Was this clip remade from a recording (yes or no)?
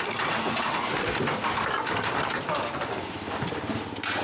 no